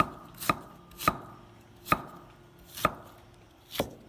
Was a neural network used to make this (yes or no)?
no